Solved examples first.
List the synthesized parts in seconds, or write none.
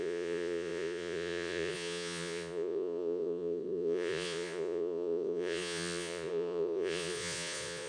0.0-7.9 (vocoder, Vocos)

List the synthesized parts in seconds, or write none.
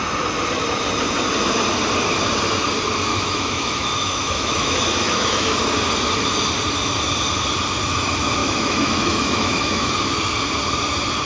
3.1-5.6 (autoencoder, DAC-VAE); 8.4-9.9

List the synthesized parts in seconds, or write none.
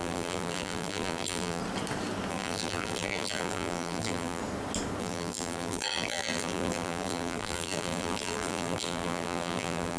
0.0-1.6 (vocoder, BigVGAN v2); 2.3-4.4; 5.0-10.0